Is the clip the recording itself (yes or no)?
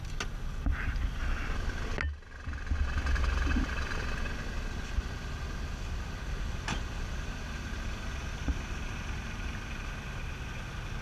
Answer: yes